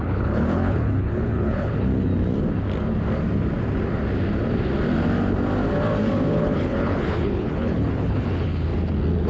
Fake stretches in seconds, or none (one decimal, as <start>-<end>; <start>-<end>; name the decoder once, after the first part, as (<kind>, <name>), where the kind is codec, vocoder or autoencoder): 0.0-2.1 (codec, HILCodec); 6.3-8.7